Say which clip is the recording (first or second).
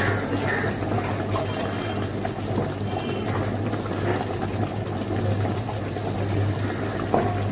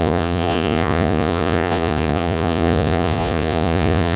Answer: first